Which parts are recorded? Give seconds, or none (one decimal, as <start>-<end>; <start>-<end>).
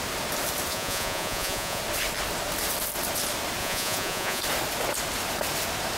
0.0-0.7; 1.8-3.6; 4.4-6.0